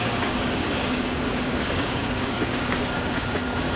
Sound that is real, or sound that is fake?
fake